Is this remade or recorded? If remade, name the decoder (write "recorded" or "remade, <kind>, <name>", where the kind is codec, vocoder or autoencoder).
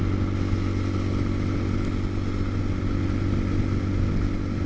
recorded